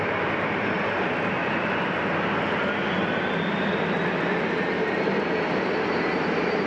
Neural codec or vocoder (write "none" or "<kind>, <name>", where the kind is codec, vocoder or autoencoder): none